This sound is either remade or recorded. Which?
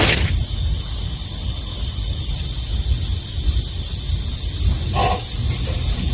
recorded